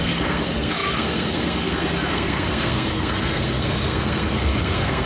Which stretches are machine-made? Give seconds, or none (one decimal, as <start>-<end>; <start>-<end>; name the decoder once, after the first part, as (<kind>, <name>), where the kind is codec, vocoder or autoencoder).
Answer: 0.0-5.1 (codec, SNAC)